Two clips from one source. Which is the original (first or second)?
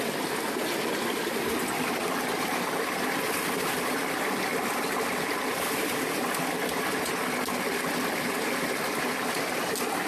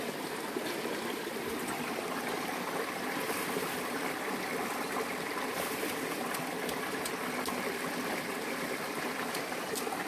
first